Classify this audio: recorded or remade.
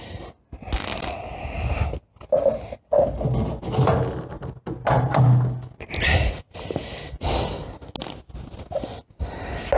recorded